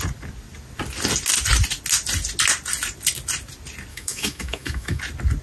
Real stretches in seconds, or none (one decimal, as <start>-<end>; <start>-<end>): 0.0-3.9; 5.0-5.4